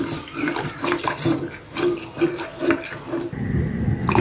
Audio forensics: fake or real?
real